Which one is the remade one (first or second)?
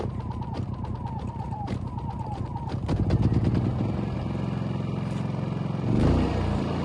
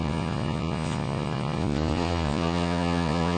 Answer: second